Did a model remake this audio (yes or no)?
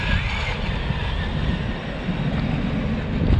no